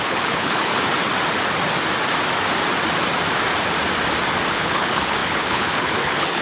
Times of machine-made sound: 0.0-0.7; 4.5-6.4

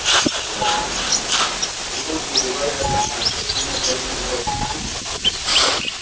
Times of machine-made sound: 4.9-6.0

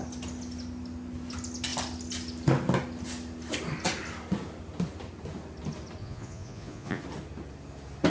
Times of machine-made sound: 6.0-7.0